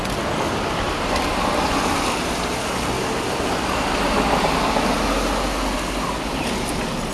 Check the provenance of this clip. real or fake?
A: real